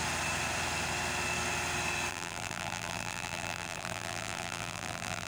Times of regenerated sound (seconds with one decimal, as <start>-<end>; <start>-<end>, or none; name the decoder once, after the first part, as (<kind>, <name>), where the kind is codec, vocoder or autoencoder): 2.1-5.3 (vocoder, BigVGAN v2)